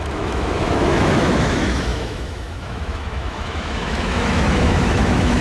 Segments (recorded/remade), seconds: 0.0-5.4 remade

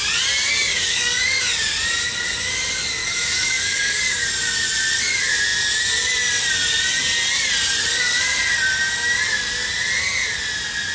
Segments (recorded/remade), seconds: 0.0-0.7 recorded; 0.7-1.4 remade; 1.4-3.0 recorded; 3.0-4.3 remade; 4.3-10.9 recorded

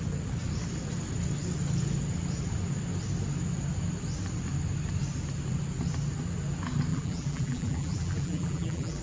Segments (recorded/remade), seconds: 0.0-6.9 recorded; 6.9-9.0 remade

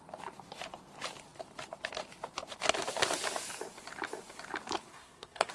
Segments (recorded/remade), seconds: 0.0-4.9 recorded; 4.9-5.5 remade

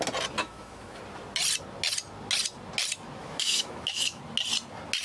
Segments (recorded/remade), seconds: 0.0-0.4 recorded; 0.4-1.0 remade; 1.0-3.2 recorded; 3.2-4.2 remade; 4.2-5.0 recorded

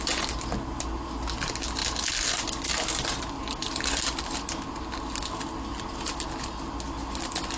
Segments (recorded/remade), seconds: 0.0-7.6 recorded